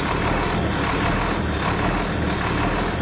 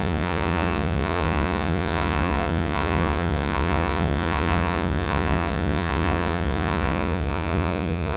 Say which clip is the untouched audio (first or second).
first